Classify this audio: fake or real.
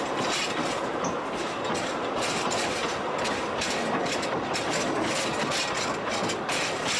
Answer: real